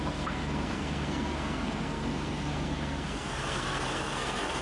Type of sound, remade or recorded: remade